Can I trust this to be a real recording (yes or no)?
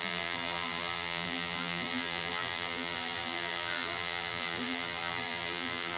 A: no